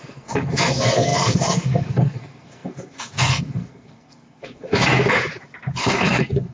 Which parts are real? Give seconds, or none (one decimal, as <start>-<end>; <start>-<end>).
4.8-5.7